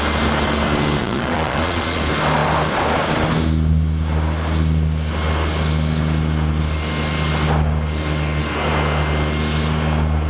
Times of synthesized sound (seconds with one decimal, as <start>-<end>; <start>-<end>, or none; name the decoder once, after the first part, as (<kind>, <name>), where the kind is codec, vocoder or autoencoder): 1.0-2.0 (vocoder, Vocos)